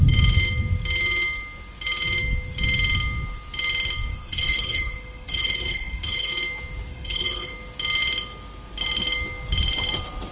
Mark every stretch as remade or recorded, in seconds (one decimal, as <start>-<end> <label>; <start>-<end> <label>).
0.0-4.1 recorded; 4.1-6.3 remade; 6.3-6.9 recorded; 6.9-7.5 remade; 7.5-10.3 recorded